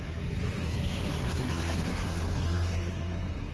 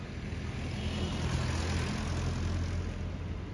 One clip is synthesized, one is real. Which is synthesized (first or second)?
first